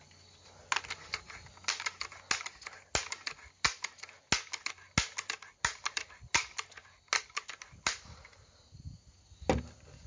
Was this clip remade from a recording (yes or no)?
no